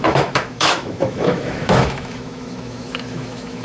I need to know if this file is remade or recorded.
remade